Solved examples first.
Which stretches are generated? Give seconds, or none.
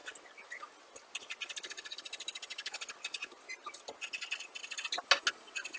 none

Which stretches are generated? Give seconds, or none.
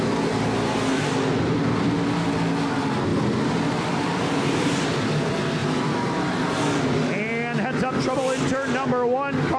3.1-4.4 (vocoder, BigVGAN v2)